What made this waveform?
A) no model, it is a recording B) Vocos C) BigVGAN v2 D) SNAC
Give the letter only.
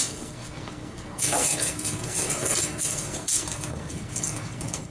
D